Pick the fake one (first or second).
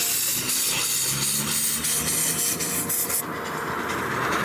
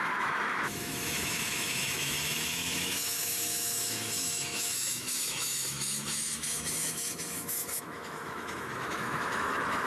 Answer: second